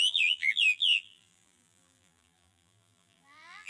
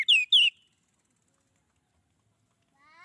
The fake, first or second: first